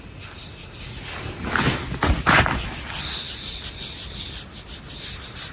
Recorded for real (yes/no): yes